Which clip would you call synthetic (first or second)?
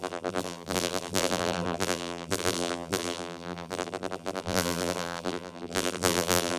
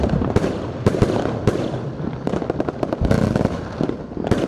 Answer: first